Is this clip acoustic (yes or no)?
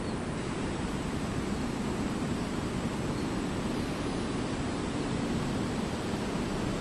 yes